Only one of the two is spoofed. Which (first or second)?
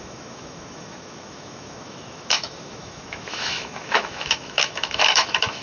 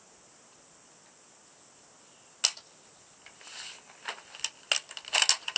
first